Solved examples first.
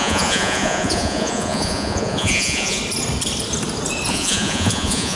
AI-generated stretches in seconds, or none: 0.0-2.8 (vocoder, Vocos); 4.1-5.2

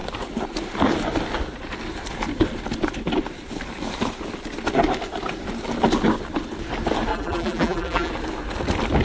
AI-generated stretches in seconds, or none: 7.1-8.1 (vocoder, BigVGAN v2)

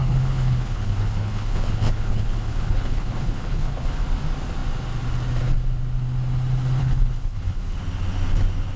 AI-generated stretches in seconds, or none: 0.0-4.0 (codec, HILCodec); 6.8-7.8

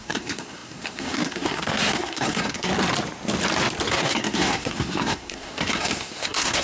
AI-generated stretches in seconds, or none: 0.0-2.7 (codec, SNAC); 3.9-6.6

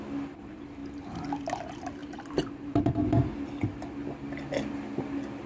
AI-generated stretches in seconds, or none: none

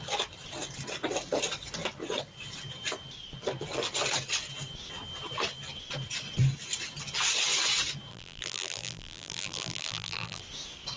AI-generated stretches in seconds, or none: 8.1-10.4 (vocoder, BigVGAN v2)

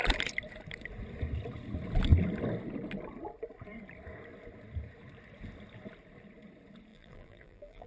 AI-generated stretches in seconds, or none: 6.9-7.9 (vocoder, BigVGAN v2)